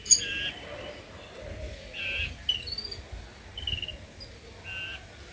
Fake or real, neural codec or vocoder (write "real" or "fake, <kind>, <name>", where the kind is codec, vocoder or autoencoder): real